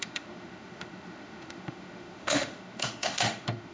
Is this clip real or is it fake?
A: fake